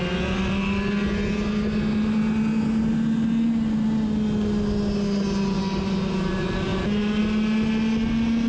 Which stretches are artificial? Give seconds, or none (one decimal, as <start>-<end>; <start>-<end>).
none